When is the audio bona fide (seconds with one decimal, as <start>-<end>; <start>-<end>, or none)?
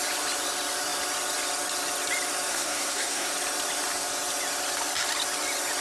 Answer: 0.0-2.5; 3.3-5.8